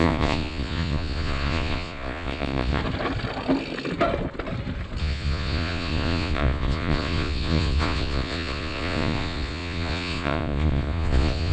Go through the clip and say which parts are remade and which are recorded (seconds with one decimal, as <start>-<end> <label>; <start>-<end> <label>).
0.0-2.8 remade; 2.8-5.0 recorded; 5.0-11.5 remade